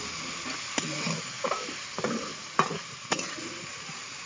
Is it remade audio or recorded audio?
recorded